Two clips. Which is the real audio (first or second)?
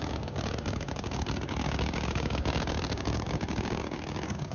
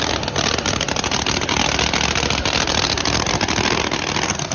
second